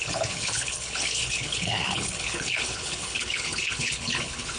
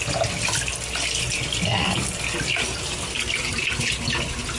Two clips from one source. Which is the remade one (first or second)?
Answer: first